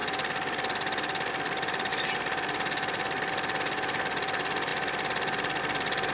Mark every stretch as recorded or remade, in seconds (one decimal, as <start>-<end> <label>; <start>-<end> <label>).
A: 0.0-6.1 recorded